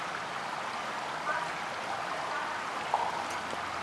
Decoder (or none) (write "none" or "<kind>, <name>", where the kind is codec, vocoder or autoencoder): none